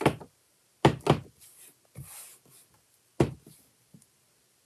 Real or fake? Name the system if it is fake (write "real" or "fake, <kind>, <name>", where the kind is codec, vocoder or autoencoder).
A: real